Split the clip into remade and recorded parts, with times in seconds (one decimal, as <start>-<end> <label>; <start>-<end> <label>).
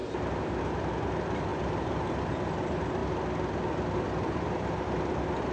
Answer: 0.0-1.5 recorded; 1.5-2.2 remade; 2.2-5.5 recorded